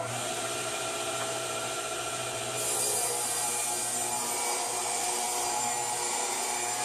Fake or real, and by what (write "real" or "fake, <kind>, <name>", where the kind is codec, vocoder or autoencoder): fake, vocoder, BigVGAN v2